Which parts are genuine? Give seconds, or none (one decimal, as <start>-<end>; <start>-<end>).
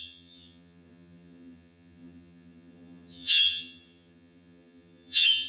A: none